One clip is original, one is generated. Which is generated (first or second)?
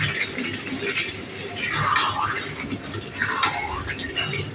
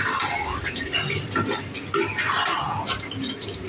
second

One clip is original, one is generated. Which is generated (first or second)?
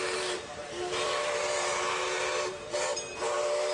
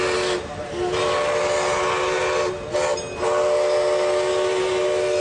first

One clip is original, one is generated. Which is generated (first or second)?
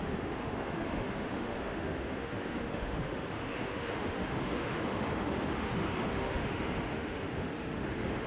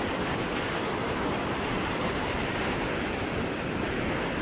first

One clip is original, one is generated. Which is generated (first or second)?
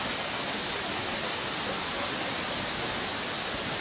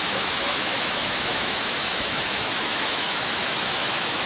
second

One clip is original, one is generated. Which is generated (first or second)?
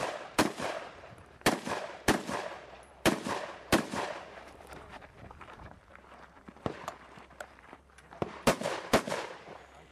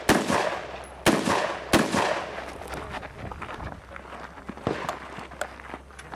first